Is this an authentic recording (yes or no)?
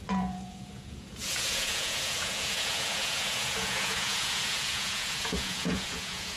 no